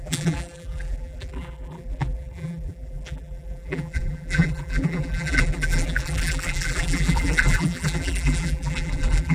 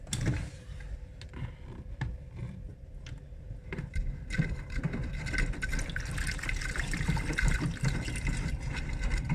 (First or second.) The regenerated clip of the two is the first